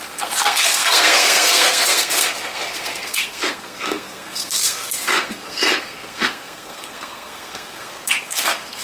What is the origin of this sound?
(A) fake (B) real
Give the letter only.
A